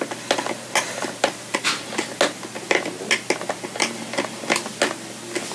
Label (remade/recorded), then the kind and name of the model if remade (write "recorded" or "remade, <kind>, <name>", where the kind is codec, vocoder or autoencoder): recorded